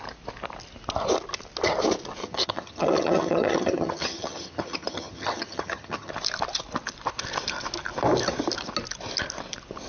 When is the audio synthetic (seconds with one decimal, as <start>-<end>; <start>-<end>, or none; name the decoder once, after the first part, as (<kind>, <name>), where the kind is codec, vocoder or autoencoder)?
2.2-6.1 (vocoder, HiFi-GAN)

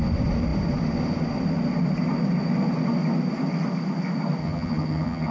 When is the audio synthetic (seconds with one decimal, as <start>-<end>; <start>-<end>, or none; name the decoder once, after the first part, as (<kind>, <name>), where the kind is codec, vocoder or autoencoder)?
4.4-5.3 (vocoder, HiFi-GAN)

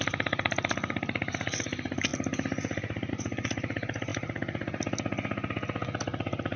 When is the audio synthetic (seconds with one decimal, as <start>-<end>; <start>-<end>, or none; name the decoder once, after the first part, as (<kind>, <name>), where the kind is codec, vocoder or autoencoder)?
none